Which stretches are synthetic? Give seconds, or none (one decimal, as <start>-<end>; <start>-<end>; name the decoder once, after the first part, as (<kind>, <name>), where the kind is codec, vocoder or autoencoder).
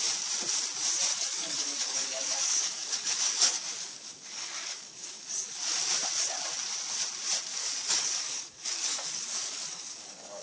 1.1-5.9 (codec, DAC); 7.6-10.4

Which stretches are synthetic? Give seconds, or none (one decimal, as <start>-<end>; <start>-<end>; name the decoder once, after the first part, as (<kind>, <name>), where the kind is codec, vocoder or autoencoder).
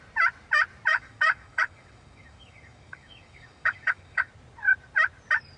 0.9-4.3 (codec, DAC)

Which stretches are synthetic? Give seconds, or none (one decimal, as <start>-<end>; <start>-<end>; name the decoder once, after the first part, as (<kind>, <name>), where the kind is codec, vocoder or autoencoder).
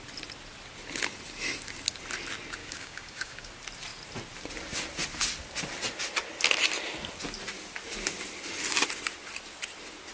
2.6-3.5 (codec, DAC)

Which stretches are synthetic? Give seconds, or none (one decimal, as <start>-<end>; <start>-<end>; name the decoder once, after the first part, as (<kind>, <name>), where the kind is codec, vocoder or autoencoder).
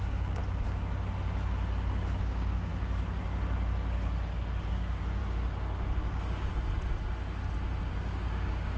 0.0-0.4 (codec, DAC); 2.2-2.7; 4.7-5.2; 6.1-6.5; 7.9-8.8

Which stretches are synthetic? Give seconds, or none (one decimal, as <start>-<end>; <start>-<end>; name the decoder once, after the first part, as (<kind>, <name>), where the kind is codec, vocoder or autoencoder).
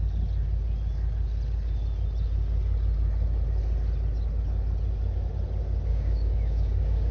5.9-7.1 (codec, DAC)